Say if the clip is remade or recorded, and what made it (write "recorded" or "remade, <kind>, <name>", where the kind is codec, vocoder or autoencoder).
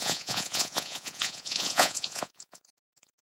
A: remade, vocoder, Vocos